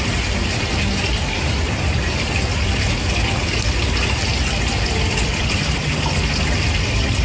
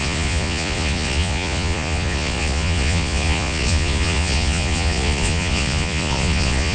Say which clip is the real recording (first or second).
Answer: first